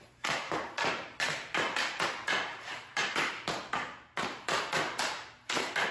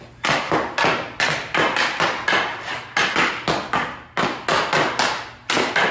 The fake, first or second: first